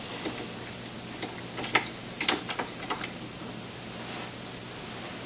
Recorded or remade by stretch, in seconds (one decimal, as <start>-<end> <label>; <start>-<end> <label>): 0.0-2.0 recorded; 2.0-3.5 remade; 3.5-5.3 recorded

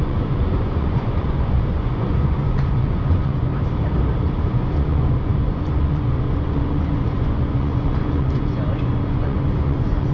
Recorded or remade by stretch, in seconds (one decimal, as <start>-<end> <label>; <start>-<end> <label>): 0.0-3.5 remade; 3.5-4.4 recorded; 4.4-10.1 remade

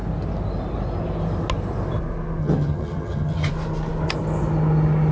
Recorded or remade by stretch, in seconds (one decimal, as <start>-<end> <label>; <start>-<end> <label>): 0.0-2.4 recorded; 2.4-3.5 remade; 3.5-5.1 recorded

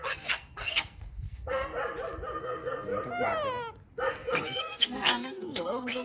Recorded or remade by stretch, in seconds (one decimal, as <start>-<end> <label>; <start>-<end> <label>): 0.0-1.8 remade; 1.8-2.4 recorded; 2.4-2.9 remade; 2.9-4.1 recorded; 4.1-6.0 remade

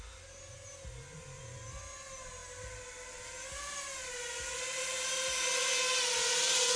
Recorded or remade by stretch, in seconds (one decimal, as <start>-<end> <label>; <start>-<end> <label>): 0.0-6.8 recorded

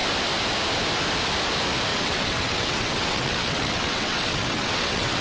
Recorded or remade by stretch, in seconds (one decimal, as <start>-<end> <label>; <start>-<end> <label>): 0.0-1.9 recorded; 1.9-5.2 remade

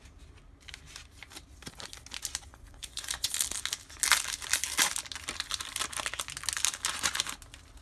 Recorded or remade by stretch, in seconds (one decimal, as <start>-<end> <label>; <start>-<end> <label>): 0.0-2.5 recorded; 2.5-3.3 remade; 3.3-7.8 recorded